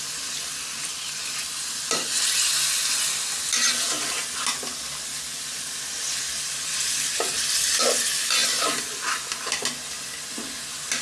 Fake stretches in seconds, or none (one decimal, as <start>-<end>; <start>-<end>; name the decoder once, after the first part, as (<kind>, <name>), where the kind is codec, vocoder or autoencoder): none